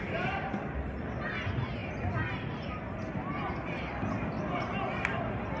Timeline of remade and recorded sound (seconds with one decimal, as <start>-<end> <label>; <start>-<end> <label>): 0.0-5.6 recorded